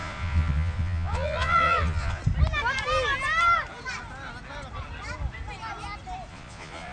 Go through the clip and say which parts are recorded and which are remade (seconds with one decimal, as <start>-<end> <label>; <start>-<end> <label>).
0.0-2.2 remade; 2.2-6.3 recorded; 6.3-6.9 remade